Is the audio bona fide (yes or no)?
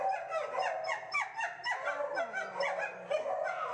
yes